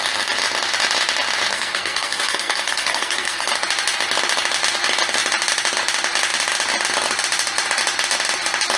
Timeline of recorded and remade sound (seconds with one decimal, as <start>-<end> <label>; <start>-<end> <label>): 0.0-1.5 recorded; 1.5-3.5 remade; 3.5-8.8 recorded